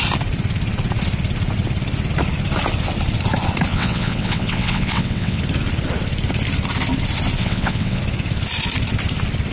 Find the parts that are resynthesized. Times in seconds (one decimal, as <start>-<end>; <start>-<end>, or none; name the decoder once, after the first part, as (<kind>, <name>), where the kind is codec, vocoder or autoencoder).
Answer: 3.7-5.4 (vocoder, WaveNeXt); 7.4-8.0